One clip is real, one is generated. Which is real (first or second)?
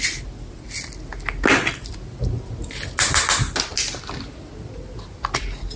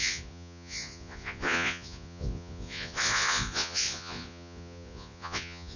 first